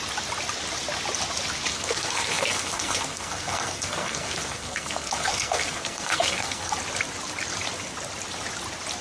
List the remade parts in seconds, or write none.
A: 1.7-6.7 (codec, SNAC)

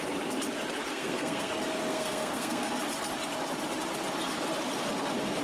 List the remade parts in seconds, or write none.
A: 0.9-1.5 (codec, SNAC); 1.9-2.7

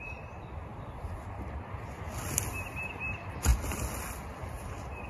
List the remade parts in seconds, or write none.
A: none